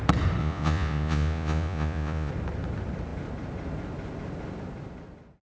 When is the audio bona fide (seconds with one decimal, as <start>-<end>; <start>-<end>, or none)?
0.0-0.4; 2.3-5.4